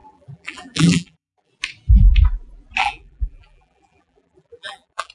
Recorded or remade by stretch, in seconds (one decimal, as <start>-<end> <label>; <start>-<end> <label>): 0.0-1.5 remade; 1.5-2.8 recorded; 2.8-5.1 remade